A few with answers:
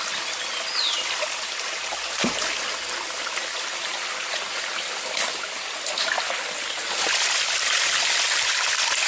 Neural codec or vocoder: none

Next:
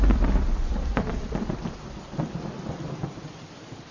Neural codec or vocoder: none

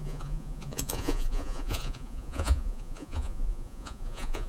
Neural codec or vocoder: vocoder, Vocos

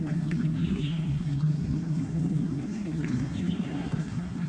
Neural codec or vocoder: codec, SNAC